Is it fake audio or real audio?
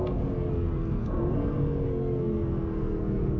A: fake